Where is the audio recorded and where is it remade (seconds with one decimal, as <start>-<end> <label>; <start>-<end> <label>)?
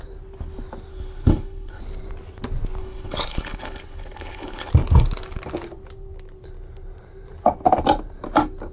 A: 0.0-0.9 recorded; 0.9-1.8 remade; 1.8-2.8 recorded; 2.8-4.7 remade; 4.7-8.7 recorded